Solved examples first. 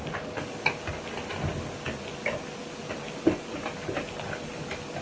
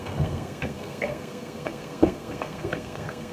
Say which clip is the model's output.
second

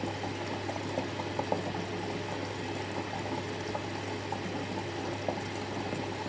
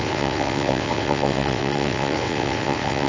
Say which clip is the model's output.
second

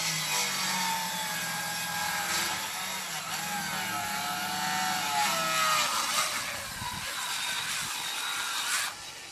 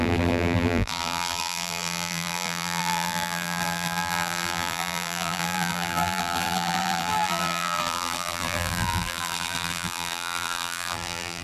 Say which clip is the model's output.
second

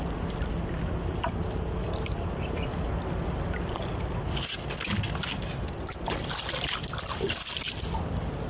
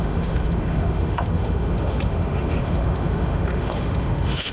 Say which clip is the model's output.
second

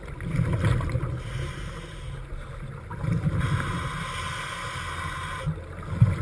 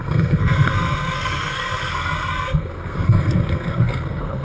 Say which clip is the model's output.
second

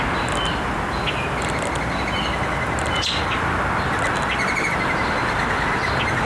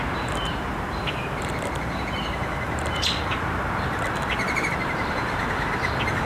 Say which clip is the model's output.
second